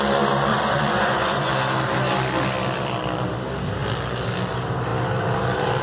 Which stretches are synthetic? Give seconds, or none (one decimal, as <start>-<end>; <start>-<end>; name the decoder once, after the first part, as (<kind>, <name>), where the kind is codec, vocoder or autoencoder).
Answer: 0.5-1.5 (vocoder, Vocos)